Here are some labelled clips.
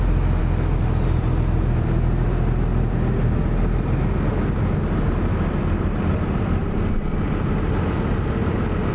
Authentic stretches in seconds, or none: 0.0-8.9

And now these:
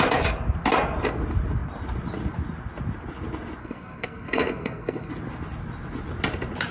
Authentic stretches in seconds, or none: 0.0-3.6; 5.1-6.7

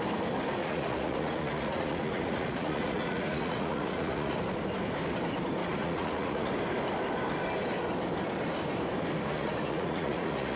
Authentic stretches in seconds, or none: 0.0-0.6; 4.4-5.6; 6.5-9.3

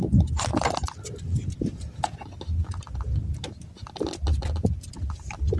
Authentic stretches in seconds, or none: 0.0-4.3; 4.9-5.6

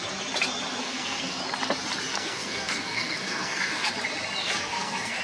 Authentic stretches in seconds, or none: 0.0-0.8; 1.4-2.1; 3.9-4.4